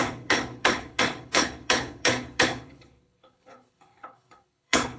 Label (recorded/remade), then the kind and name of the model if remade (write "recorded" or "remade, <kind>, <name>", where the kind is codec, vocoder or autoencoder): remade, codec, HILCodec